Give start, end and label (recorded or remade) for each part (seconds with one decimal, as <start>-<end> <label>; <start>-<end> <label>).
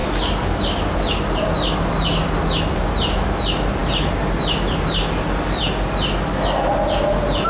0.0-7.5 recorded